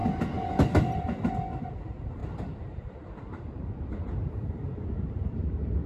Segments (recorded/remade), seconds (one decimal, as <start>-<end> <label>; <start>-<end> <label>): 0.0-1.8 recorded; 1.8-5.9 remade

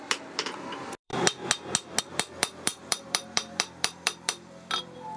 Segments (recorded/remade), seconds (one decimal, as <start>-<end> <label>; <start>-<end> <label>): 0.0-1.1 remade; 1.1-2.0 recorded; 2.0-5.2 remade

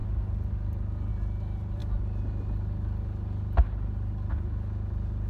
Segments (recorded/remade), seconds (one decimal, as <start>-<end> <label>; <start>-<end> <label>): 0.0-5.3 recorded

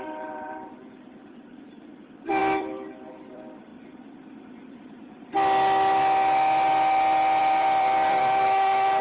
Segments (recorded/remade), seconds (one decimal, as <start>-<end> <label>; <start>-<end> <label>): 0.0-3.7 remade; 3.7-7.4 recorded; 7.4-9.0 remade

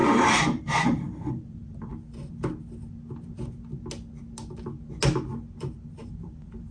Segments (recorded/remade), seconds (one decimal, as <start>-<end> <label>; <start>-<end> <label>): 0.0-1.9 remade; 1.9-5.9 recorded; 5.9-6.7 remade